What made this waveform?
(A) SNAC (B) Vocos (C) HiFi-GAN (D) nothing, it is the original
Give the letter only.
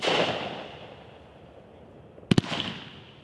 D